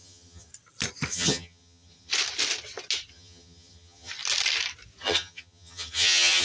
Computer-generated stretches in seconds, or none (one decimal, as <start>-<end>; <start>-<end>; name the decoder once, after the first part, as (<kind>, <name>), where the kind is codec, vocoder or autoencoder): 0.0-0.5 (vocoder, HiFi-GAN); 1.1-2.1; 3.1-4.1; 5.0-6.4